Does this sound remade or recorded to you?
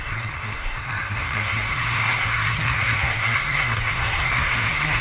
remade